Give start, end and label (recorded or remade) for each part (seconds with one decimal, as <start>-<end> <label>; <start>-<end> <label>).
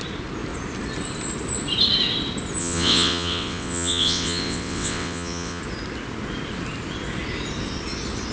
0.0-2.6 recorded; 2.6-5.6 remade; 5.6-8.3 recorded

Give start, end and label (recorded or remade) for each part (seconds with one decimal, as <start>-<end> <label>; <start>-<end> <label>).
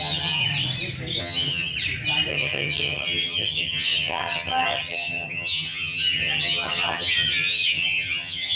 0.0-0.4 remade; 0.4-1.2 recorded; 1.2-1.7 remade; 1.7-2.3 recorded; 2.3-8.6 remade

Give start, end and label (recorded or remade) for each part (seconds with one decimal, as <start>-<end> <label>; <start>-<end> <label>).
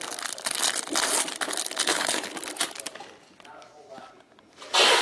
0.0-1.8 recorded; 1.8-2.3 remade; 2.3-5.0 recorded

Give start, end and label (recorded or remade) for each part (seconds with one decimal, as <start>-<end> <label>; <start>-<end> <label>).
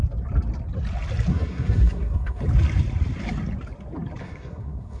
0.0-1.3 recorded; 1.3-2.4 remade; 2.4-4.2 recorded; 4.2-5.0 remade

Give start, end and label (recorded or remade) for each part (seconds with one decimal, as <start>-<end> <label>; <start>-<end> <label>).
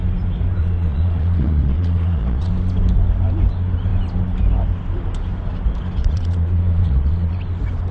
0.0-0.6 recorded; 0.6-2.5 remade; 2.5-6.0 recorded; 6.0-7.3 remade; 7.3-7.9 recorded